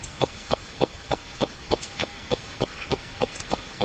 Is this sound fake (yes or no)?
yes